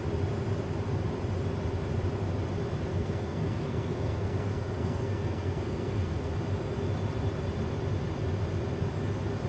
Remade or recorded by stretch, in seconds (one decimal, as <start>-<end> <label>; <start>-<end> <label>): 0.0-2.9 recorded; 2.9-6.3 remade; 6.3-9.5 recorded